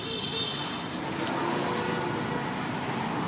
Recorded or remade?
recorded